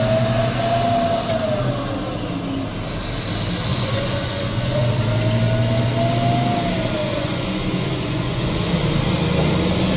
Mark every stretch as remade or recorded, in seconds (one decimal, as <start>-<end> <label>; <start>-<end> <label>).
0.0-3.7 recorded; 3.7-4.9 remade; 4.9-7.0 recorded; 7.0-8.7 remade; 8.7-10.0 recorded